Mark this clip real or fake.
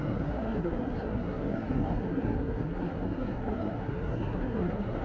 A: fake